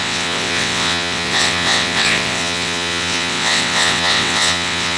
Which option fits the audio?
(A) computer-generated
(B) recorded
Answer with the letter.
A